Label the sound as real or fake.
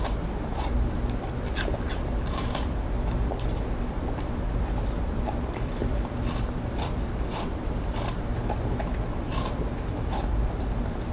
fake